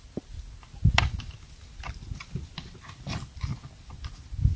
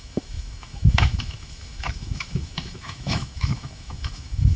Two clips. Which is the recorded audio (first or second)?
first